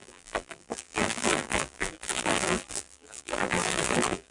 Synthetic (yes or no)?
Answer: yes